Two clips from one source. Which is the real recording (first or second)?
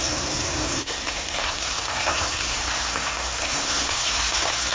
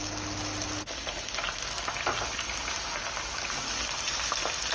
second